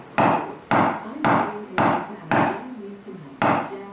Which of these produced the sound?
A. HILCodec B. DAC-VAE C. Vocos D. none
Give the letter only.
D